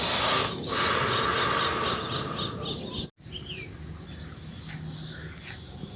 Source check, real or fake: real